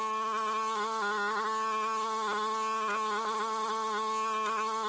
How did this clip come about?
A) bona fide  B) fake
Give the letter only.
A